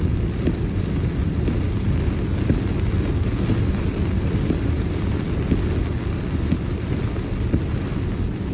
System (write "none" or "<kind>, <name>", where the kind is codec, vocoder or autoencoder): none